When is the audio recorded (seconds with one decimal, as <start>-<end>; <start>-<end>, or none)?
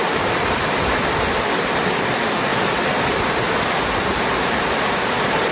0.0-5.5